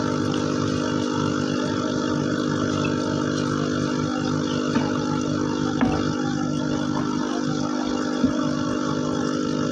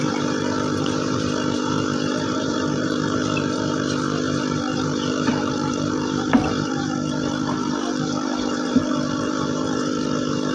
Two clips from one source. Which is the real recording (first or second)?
first